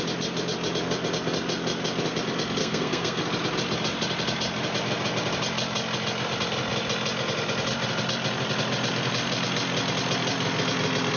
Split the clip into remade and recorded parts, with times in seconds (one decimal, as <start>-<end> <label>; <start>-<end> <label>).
0.0-2.6 recorded; 2.6-3.2 remade; 3.2-11.2 recorded